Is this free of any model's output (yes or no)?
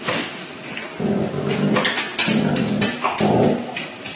yes